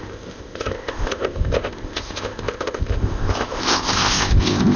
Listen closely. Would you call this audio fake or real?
fake